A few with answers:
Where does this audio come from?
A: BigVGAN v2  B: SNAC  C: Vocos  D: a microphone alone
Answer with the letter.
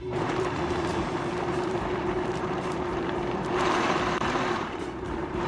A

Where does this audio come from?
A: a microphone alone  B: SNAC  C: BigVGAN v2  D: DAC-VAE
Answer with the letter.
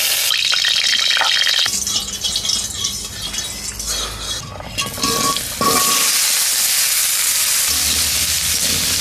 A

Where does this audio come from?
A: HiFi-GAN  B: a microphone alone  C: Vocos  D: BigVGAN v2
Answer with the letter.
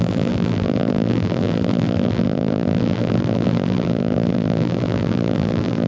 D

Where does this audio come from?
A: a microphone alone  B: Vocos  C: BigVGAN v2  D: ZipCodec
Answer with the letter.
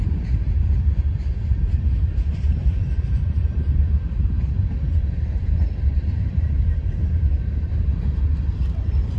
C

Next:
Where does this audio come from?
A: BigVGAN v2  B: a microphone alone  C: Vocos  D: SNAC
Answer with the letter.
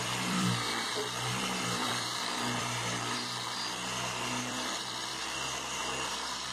A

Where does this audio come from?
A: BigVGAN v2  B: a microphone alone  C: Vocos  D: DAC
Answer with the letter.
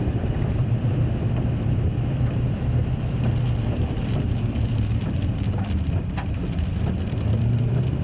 A